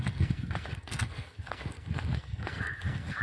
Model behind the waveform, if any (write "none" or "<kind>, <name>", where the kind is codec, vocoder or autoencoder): codec, SNAC